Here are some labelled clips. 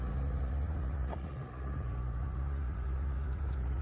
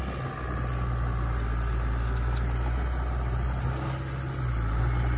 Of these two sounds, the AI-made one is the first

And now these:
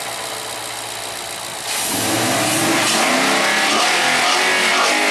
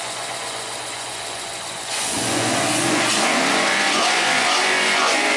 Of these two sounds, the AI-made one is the second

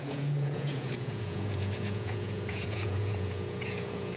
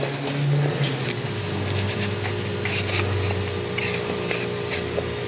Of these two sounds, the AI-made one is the first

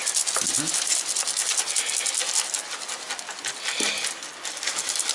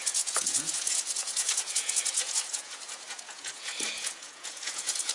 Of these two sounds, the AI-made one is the second